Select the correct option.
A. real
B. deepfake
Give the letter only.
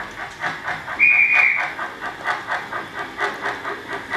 A